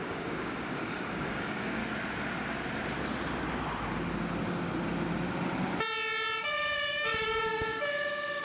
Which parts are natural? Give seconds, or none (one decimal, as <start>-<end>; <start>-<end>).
1.8-6.4